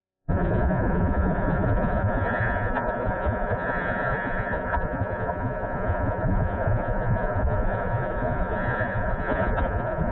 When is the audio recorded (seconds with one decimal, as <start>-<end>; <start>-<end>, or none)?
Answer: none